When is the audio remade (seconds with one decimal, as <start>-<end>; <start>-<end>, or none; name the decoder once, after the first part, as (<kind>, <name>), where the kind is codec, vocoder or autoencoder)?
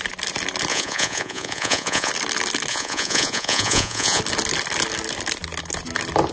0.7-2.1 (vocoder, Vocos); 2.7-4.2